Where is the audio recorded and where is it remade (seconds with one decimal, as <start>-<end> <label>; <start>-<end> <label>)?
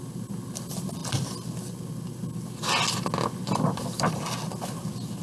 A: 0.0-5.2 recorded